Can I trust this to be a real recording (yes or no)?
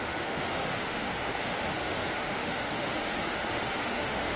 no